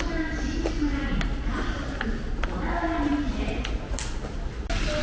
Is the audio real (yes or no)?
yes